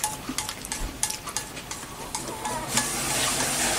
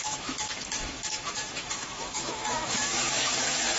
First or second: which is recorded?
first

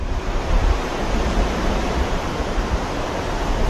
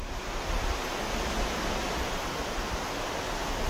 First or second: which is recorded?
second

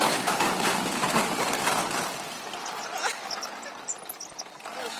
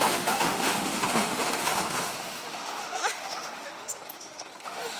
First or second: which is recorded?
first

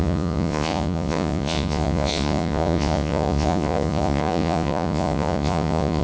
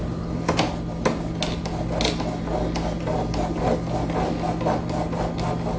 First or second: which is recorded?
second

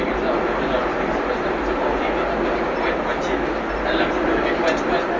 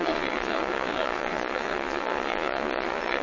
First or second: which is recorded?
first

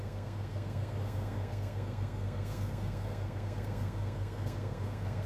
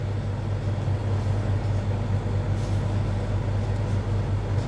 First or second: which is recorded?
second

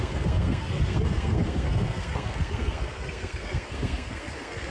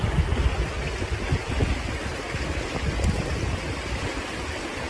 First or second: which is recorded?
second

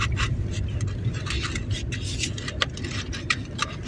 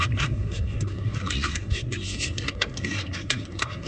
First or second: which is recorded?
first